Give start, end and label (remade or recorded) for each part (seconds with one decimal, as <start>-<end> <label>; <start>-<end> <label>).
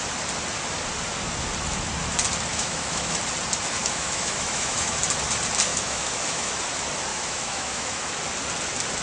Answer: 0.0-2.5 recorded; 2.5-3.2 remade; 3.2-3.8 recorded; 3.8-5.0 remade; 5.0-5.7 recorded; 5.7-6.6 remade; 6.6-7.1 recorded; 7.1-8.1 remade; 8.1-9.0 recorded